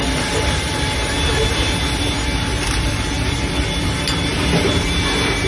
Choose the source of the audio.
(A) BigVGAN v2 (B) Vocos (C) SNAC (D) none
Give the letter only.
D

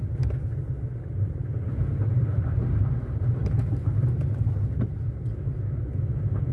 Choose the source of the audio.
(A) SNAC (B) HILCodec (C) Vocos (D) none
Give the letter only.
D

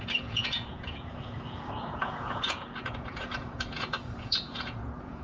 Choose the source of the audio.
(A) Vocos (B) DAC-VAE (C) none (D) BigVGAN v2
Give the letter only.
A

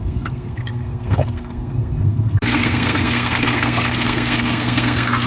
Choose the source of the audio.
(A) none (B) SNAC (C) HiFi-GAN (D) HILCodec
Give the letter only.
B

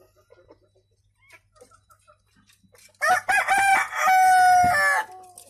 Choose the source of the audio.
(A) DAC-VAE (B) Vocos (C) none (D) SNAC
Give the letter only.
C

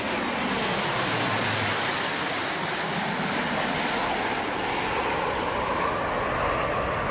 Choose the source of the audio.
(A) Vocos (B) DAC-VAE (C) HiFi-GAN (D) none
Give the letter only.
D